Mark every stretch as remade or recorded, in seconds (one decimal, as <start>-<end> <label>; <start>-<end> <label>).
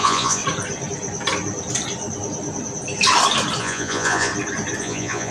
0.0-0.4 remade; 0.4-3.6 recorded; 3.6-4.3 remade; 4.3-4.8 recorded; 4.8-5.3 remade